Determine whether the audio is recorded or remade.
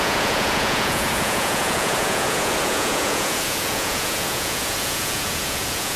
remade